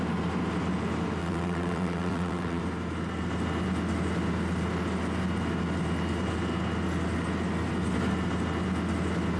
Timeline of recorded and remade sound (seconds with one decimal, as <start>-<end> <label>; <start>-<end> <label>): 0.0-1.2 recorded; 1.2-2.6 remade; 2.6-9.4 recorded